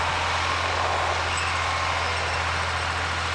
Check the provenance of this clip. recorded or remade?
recorded